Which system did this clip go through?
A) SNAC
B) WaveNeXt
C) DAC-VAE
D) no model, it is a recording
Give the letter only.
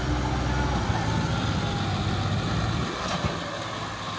D